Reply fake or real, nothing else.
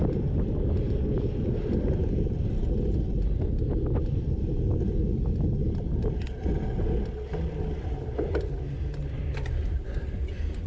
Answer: real